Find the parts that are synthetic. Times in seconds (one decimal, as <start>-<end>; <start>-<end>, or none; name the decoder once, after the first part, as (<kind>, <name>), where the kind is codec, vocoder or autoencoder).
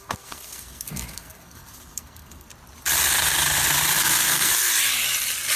0.0-2.5 (codec, SNAC); 4.0-4.5